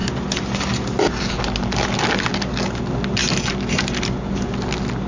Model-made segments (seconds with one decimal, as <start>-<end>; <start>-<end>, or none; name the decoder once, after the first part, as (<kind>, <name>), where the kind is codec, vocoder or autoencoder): none